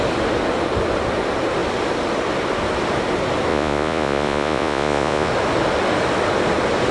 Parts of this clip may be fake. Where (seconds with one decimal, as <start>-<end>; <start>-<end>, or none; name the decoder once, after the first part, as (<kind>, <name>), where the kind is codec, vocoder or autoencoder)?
3.5-5.3 (vocoder, Vocos)